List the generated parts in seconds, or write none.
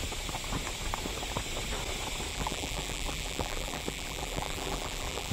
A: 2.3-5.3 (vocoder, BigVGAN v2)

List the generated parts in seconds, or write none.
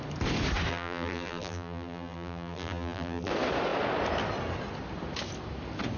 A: 0.7-3.3 (vocoder, BigVGAN v2)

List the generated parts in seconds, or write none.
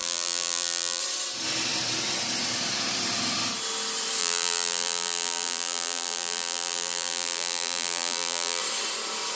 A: 0.0-1.0 (vocoder, BigVGAN v2); 4.2-8.6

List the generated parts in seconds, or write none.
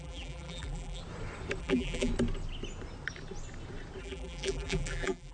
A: 0.0-1.0 (vocoder, BigVGAN v2); 1.6-2.1; 4.0-5.3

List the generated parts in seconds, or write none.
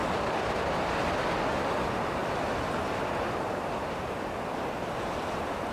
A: none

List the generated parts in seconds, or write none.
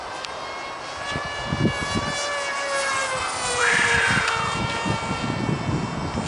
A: 3.0-5.2 (vocoder, BigVGAN v2)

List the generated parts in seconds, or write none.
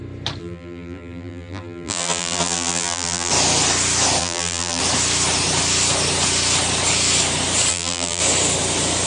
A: 0.4-3.3 (vocoder, BigVGAN v2); 4.2-4.8; 7.7-8.2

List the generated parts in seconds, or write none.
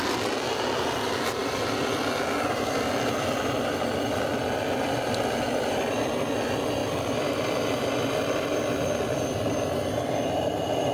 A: 1.4-4.0 (vocoder, BigVGAN v2); 6.8-7.5